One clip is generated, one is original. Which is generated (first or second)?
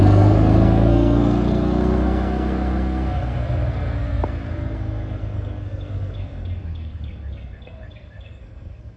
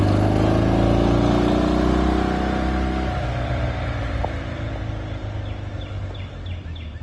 first